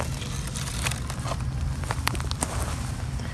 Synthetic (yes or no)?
no